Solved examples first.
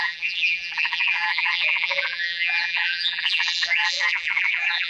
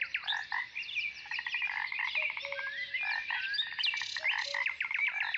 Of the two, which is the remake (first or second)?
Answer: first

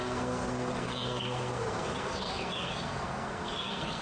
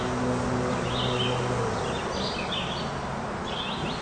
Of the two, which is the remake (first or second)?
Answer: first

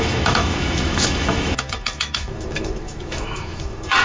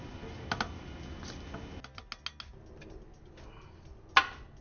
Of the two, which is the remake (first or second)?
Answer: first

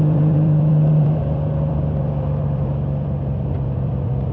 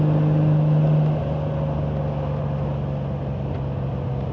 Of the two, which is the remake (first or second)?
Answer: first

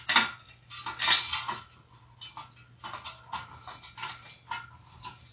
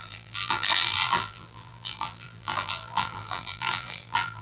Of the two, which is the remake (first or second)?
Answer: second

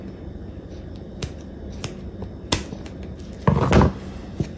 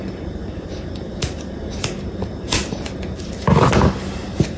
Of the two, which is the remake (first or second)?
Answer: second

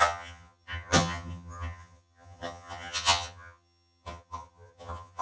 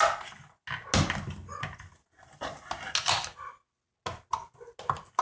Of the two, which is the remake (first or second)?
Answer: first